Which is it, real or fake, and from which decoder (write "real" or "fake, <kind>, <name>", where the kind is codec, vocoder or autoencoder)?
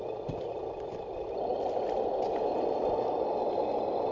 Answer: real